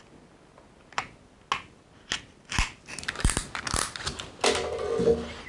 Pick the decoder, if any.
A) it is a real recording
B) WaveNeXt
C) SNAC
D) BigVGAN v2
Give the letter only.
A